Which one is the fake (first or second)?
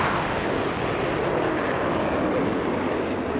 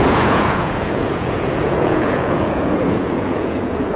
second